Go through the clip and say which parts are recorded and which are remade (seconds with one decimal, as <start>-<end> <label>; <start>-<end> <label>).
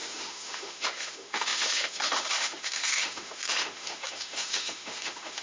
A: 0.0-5.4 remade